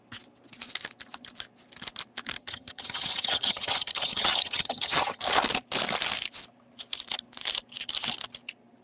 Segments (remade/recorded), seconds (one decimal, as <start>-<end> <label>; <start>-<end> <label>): 0.0-2.4 recorded; 2.4-5.2 remade; 5.2-8.8 recorded